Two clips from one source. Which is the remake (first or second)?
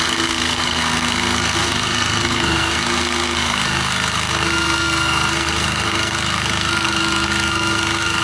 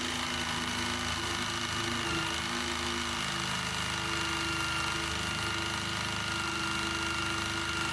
first